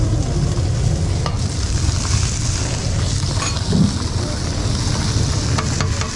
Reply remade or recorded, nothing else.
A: recorded